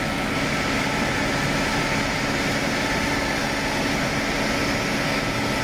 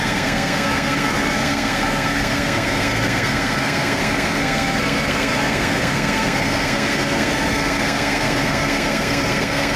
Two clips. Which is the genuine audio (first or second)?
first